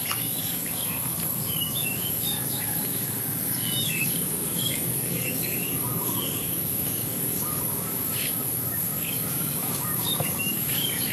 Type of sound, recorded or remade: remade